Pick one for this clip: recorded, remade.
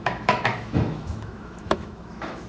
remade